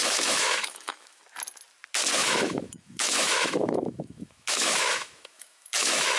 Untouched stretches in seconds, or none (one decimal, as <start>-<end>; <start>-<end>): 1.2-2.2